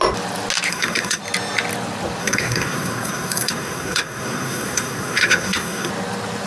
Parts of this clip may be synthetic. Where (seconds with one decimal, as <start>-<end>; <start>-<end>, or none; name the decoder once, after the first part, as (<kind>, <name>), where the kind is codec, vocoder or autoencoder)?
0.7-1.2 (codec, SNAC); 2.2-5.9